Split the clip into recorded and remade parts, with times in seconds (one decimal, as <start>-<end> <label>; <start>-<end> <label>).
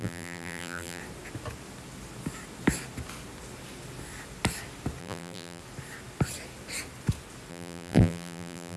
0.0-1.0 remade; 1.0-5.0 recorded; 5.0-5.6 remade; 5.6-7.5 recorded; 7.5-8.8 remade